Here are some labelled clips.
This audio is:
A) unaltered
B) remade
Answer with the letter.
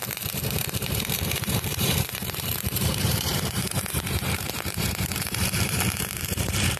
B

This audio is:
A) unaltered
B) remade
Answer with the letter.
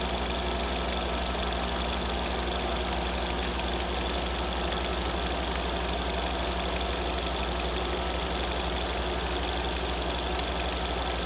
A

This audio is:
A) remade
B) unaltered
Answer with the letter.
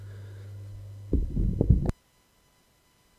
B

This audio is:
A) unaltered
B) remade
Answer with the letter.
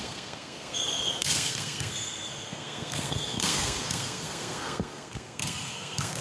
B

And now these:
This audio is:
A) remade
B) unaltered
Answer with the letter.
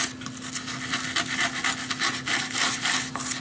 B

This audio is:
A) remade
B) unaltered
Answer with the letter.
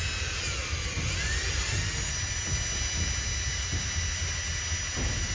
B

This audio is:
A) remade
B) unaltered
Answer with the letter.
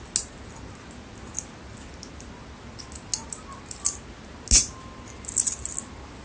B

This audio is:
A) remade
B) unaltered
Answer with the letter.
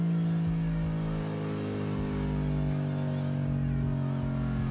B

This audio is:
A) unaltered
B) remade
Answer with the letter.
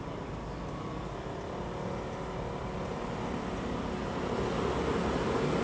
A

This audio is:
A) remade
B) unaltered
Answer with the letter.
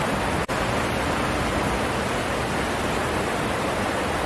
B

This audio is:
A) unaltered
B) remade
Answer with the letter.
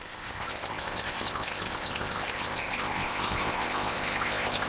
B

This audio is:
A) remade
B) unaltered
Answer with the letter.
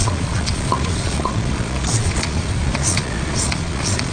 A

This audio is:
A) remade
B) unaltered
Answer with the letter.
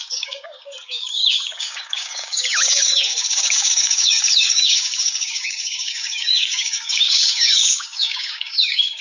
A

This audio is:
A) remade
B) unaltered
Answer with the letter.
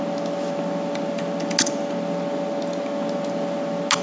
B